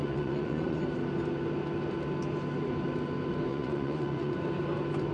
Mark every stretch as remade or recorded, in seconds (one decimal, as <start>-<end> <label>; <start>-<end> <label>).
0.0-0.8 remade; 0.8-3.5 recorded; 3.5-4.3 remade; 4.3-5.1 recorded